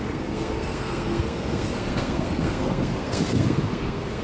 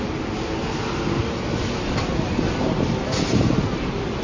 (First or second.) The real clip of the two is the second